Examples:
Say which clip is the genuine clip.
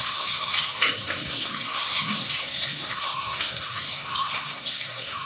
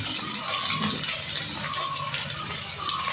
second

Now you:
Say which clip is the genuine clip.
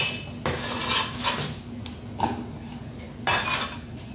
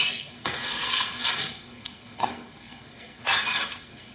first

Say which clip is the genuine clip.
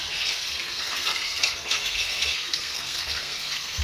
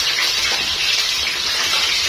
second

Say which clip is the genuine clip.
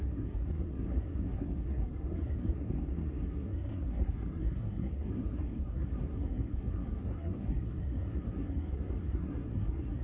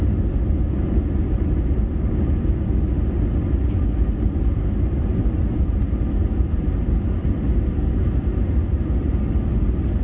second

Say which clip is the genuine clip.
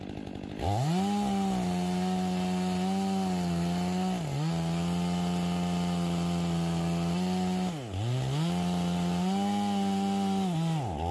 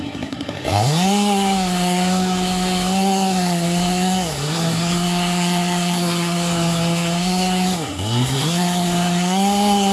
first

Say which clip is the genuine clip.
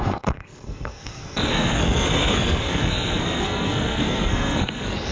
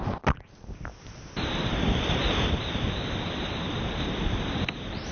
second